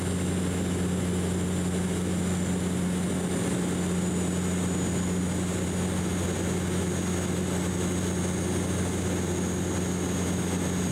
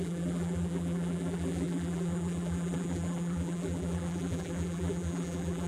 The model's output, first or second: second